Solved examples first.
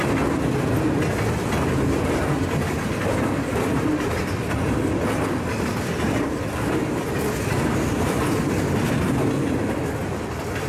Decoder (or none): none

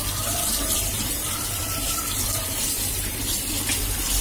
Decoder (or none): vocoder, BigVGAN v2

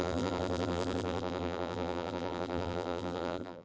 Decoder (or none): vocoder, BigVGAN v2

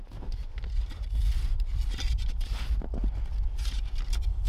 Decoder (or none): none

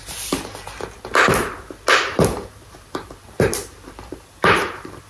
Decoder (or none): vocoder, BigVGAN v2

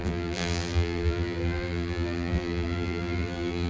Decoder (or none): vocoder, BigVGAN v2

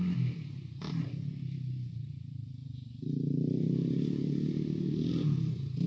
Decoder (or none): vocoder, BigVGAN v2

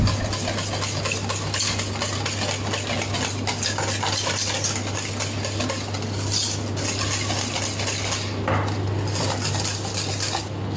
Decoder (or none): none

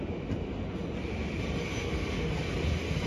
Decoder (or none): none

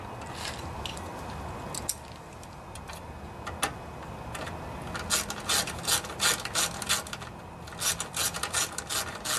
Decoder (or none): none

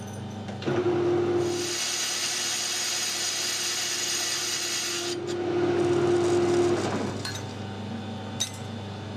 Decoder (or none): none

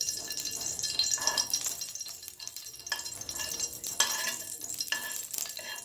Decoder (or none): none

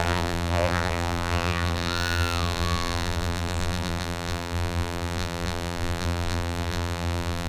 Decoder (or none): vocoder, BigVGAN v2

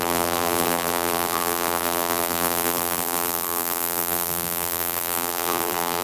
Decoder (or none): vocoder, BigVGAN v2